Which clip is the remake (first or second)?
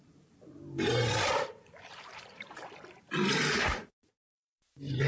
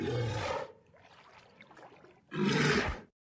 first